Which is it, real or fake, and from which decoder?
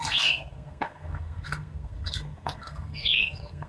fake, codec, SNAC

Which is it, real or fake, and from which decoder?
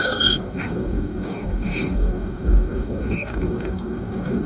fake, codec, DAC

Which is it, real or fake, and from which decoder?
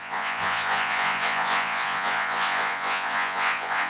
fake, vocoder, Vocos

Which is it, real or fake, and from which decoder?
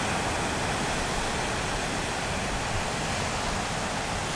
real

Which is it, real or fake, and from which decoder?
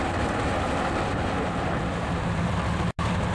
real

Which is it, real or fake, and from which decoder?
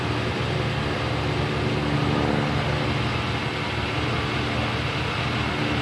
real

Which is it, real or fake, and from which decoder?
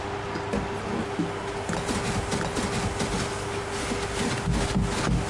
real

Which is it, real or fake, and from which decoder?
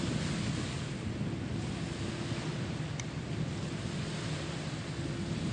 real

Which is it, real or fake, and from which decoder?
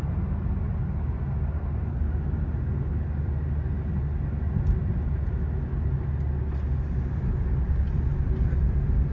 real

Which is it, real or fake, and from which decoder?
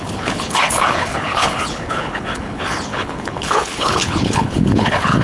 fake, codec, HILCodec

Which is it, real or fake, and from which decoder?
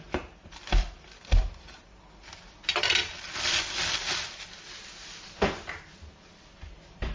real